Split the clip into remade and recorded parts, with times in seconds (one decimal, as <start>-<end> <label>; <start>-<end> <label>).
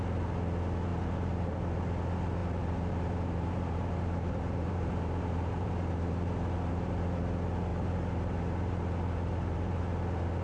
0.0-0.9 recorded; 0.9-1.8 remade; 1.8-2.4 recorded; 2.4-7.2 remade; 7.2-7.7 recorded; 7.7-9.8 remade; 9.8-10.4 recorded